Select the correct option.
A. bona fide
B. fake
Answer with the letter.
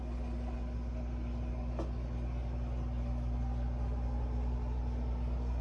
A